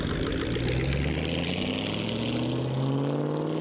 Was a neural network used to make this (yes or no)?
no